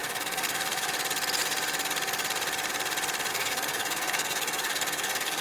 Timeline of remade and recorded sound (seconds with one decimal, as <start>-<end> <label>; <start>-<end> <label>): 0.0-0.9 remade; 0.9-3.3 recorded; 3.3-5.4 remade